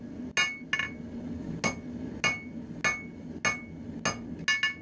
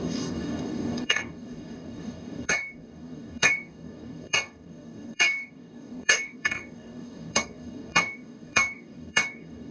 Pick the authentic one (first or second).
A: first